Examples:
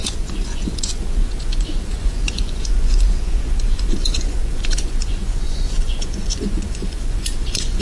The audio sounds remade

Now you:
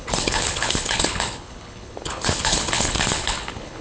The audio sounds remade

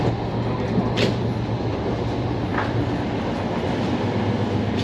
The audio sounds recorded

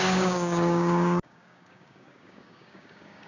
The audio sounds remade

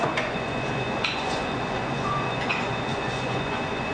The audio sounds remade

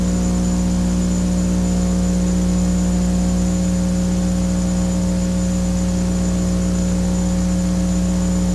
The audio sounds recorded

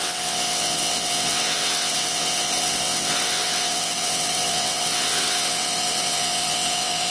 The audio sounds remade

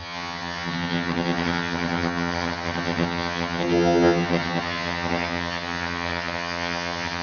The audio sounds remade